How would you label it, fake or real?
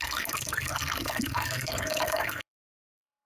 fake